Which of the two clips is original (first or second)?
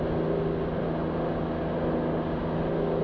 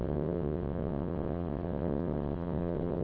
first